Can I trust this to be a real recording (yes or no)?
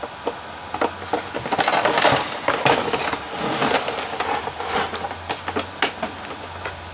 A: yes